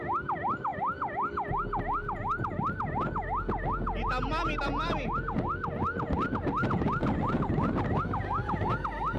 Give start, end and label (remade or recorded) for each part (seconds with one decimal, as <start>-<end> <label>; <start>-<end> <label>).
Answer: 0.0-9.2 recorded